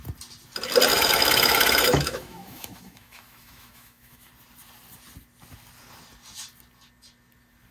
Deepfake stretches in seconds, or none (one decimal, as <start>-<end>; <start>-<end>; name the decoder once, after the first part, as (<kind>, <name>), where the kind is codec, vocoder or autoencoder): 0.9-4.3 (autoencoder, DAC-VAE)